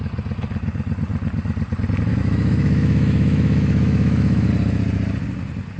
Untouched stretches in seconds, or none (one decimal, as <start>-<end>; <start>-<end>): 0.0-2.1; 4.5-5.8